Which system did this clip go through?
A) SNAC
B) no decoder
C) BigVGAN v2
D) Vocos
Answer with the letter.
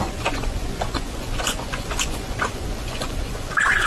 D